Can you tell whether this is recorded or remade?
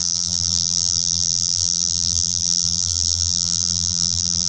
remade